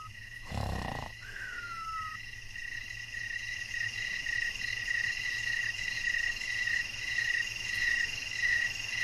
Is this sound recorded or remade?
remade